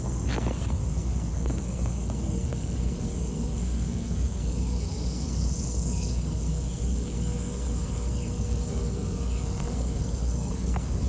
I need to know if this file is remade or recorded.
remade